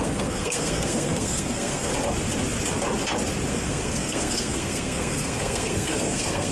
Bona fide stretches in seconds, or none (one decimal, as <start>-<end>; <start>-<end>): 1.9-3.5